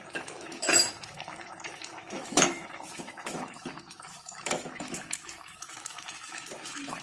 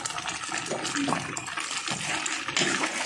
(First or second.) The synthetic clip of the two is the first